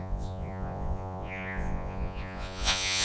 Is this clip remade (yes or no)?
yes